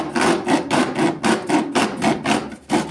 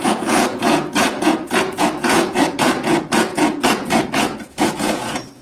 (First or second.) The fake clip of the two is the second